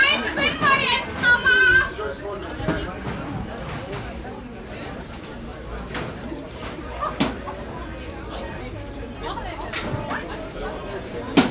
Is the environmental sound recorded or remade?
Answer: remade